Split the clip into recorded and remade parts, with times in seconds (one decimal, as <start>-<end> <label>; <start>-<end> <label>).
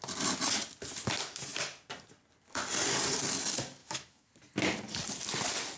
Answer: 0.0-3.8 recorded; 3.8-4.3 remade; 4.3-5.8 recorded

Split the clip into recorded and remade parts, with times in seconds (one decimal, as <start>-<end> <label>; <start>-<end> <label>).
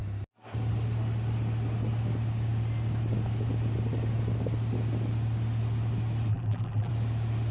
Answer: 0.0-6.3 recorded; 6.3-6.9 remade; 6.9-7.5 recorded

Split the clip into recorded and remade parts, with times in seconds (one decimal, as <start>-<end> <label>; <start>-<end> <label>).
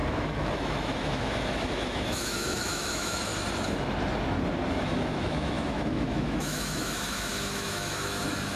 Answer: 0.0-3.3 remade; 3.3-4.7 recorded; 4.7-8.6 remade